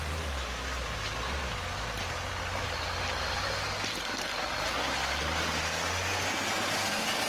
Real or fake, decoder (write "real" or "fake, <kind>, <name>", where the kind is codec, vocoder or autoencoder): real